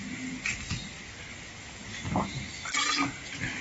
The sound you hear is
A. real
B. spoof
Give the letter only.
A